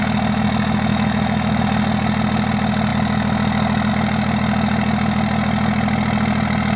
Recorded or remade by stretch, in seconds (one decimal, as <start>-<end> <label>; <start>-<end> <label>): 0.0-0.9 recorded; 0.9-1.6 remade; 1.6-6.8 recorded